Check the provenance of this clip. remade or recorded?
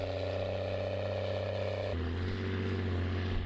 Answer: recorded